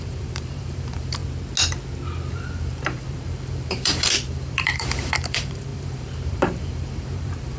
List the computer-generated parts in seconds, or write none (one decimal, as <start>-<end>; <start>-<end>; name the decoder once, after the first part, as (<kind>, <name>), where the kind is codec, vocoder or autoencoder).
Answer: 0.0-1.2 (vocoder, BigVGAN v2); 2.3-7.6